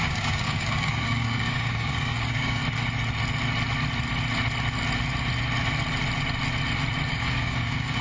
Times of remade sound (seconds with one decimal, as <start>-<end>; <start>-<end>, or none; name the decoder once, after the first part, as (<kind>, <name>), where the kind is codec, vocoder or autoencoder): 0.0-2.6 (codec, DAC); 7.1-8.0